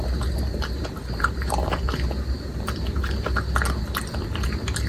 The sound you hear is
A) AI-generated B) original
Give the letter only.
B